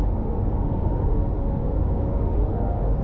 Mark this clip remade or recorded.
remade